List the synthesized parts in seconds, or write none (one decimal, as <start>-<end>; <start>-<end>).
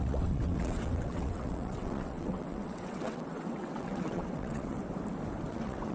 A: 0.0-4.8; 5.5-5.9